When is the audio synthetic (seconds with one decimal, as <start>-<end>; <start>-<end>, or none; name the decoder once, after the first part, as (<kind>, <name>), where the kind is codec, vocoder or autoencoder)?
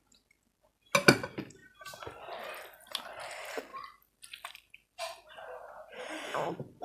3.7-6.0 (vocoder, BigVGAN v2)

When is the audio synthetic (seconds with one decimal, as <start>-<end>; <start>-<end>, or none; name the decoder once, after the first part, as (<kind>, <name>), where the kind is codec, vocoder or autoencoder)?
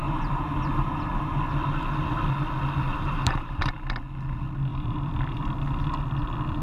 0.0-1.4 (vocoder, BigVGAN v2); 2.9-3.7; 4.7-5.4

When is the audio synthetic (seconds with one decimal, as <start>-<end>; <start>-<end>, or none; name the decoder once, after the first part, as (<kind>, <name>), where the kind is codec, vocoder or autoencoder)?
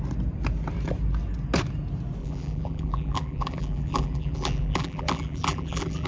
2.2-6.1 (vocoder, BigVGAN v2)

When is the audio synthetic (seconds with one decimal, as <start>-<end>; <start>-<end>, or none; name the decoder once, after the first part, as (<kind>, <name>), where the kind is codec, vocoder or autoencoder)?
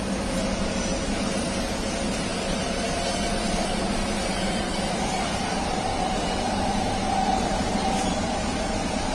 0.0-9.1 (vocoder, BigVGAN v2)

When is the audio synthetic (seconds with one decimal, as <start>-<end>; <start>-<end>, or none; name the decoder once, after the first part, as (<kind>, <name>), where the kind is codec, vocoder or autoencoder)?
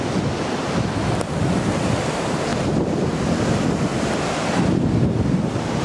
none